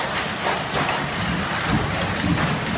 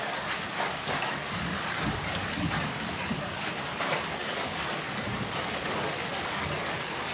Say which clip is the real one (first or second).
first